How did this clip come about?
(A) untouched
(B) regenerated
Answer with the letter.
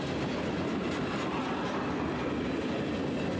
A